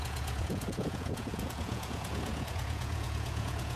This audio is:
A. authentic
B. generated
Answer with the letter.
B